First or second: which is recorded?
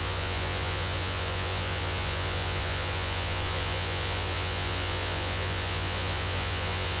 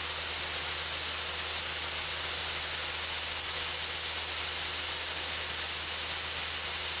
second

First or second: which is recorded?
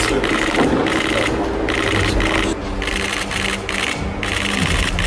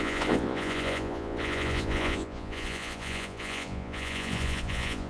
first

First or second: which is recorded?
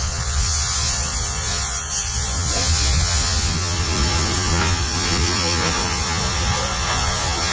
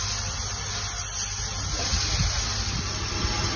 second